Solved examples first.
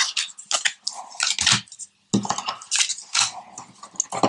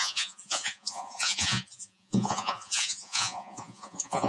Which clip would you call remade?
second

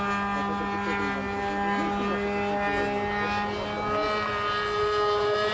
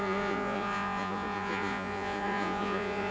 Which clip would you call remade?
second